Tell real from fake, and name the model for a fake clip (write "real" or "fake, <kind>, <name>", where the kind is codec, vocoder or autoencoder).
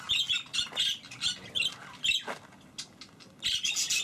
real